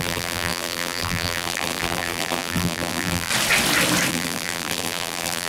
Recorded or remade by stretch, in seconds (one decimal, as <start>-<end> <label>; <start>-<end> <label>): 0.0-3.3 remade; 3.3-4.1 recorded; 4.1-5.5 remade